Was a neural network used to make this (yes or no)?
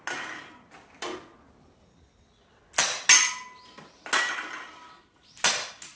no